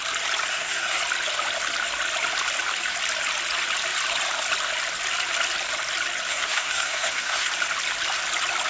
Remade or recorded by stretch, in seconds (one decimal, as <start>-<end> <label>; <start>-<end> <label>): 0.0-0.5 recorded; 0.5-1.0 remade; 1.0-6.3 recorded; 6.3-7.5 remade; 7.5-8.7 recorded